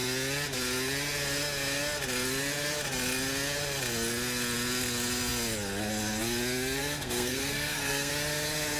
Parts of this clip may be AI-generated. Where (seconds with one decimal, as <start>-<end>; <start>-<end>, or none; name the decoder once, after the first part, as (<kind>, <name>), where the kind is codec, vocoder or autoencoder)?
6.8-8.1 (codec, SNAC)